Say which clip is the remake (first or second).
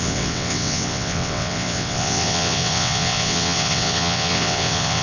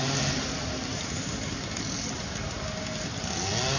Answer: first